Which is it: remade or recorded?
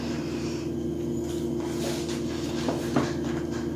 recorded